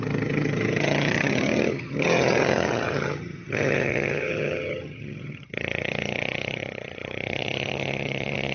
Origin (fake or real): fake